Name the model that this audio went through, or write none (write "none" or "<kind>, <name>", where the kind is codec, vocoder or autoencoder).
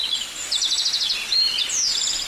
none